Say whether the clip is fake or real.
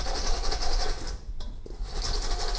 real